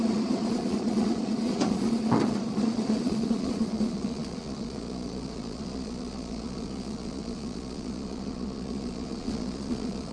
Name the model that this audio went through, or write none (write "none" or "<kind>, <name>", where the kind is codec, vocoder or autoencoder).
vocoder, Vocos